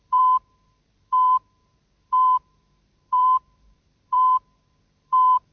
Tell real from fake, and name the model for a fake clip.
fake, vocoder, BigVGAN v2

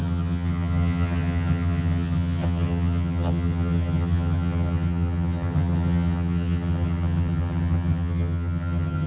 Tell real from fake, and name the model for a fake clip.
fake, vocoder, HiFi-GAN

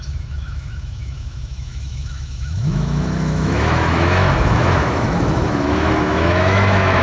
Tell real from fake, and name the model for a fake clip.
fake, autoencoder, DAC-VAE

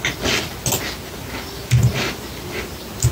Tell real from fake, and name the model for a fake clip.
real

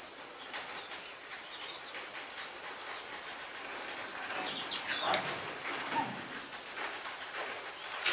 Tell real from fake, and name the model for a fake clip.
real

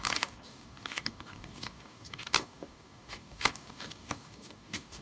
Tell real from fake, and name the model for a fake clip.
fake, codec, DAC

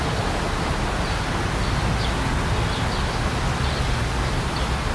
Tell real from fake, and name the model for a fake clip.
real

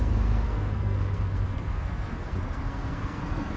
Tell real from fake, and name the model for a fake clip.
fake, codec, SNAC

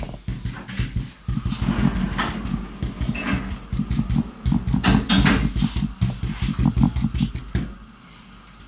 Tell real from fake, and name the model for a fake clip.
real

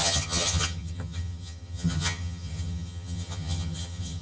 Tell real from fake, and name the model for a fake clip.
fake, vocoder, HiFi-GAN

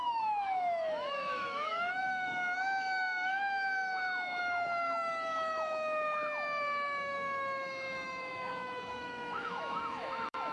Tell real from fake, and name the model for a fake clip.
fake, autoencoder, DAC-VAE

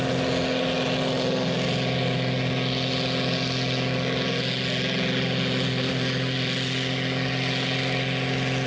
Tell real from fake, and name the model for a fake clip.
real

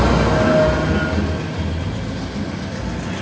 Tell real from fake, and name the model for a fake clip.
real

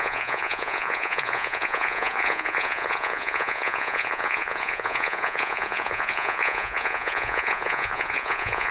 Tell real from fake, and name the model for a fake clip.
fake, vocoder, Vocos